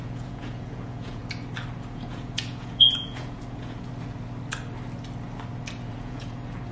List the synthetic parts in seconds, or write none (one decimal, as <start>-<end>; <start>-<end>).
0.0-1.2; 1.8-3.9; 5.9-6.7